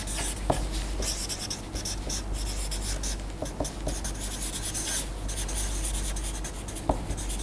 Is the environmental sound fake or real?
real